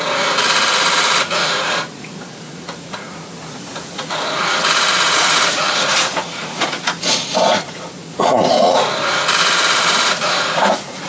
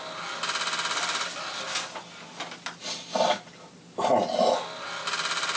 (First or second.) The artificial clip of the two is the first